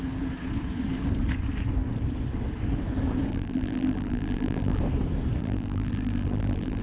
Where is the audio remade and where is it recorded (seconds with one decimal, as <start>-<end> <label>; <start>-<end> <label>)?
0.0-3.3 recorded; 3.3-4.8 remade; 4.8-5.4 recorded; 5.4-6.8 remade